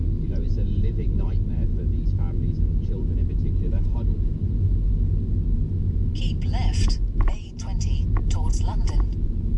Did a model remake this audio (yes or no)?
no